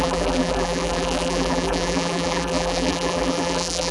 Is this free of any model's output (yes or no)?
no